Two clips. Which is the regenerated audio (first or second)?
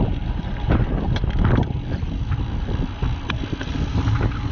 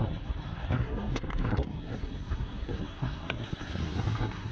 second